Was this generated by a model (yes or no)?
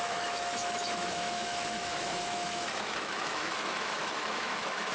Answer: yes